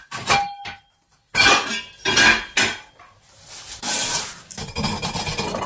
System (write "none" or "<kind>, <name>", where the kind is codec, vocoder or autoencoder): none